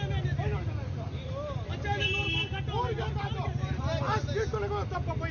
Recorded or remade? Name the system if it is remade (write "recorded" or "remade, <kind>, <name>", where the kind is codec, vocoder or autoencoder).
recorded